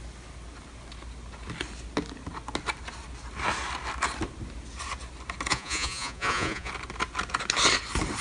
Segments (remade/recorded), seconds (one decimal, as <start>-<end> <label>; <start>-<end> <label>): 0.0-5.5 recorded; 5.5-6.7 remade; 6.7-8.2 recorded